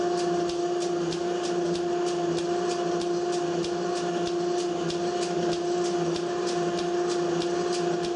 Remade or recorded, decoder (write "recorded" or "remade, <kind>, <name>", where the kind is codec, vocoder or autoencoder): recorded